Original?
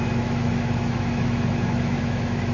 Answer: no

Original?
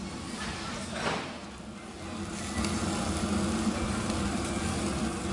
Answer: yes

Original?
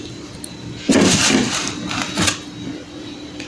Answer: yes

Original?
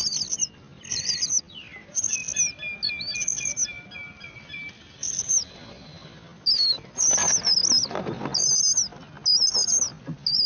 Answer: yes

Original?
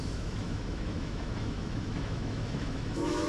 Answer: no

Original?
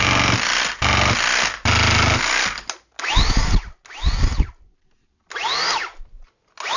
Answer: yes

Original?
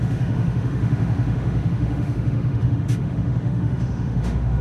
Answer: no